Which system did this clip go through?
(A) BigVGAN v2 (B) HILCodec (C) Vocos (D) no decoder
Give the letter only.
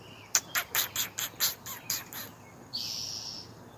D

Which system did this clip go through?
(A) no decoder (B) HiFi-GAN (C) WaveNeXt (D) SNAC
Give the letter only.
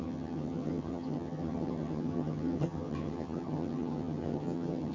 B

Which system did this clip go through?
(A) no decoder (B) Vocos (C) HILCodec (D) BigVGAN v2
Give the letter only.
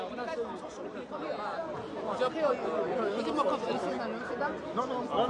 A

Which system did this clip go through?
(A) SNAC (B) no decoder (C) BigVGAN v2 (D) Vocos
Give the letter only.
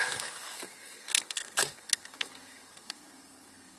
A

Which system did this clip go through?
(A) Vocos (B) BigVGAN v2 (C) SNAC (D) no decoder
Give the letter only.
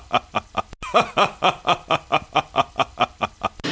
D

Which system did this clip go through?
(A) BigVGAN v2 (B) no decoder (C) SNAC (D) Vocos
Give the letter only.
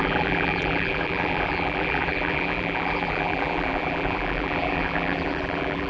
A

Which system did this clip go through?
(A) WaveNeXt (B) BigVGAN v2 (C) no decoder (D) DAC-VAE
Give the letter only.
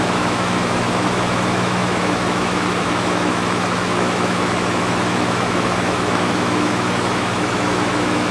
D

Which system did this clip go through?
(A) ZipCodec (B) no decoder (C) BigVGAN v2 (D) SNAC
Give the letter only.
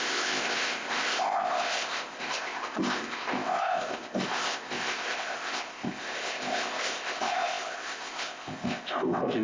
A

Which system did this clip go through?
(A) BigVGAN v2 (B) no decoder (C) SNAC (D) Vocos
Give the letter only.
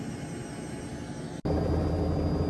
B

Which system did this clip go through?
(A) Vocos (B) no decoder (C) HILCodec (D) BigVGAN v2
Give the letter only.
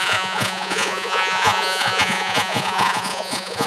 A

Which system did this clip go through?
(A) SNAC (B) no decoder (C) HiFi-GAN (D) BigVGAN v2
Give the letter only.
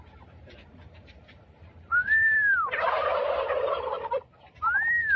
D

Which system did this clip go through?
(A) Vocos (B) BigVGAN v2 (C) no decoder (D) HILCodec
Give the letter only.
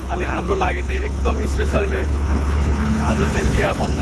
D